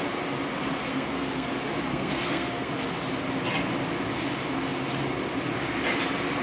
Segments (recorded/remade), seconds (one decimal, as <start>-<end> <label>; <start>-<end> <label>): 0.0-0.9 recorded; 0.9-1.5 remade; 1.5-1.9 recorded; 1.9-2.7 remade; 2.7-6.4 recorded